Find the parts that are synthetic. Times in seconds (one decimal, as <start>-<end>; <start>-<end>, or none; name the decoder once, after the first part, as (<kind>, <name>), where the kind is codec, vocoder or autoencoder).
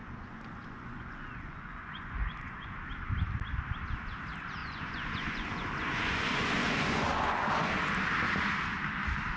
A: 0.0-2.7 (vocoder, Vocos); 4.6-7.7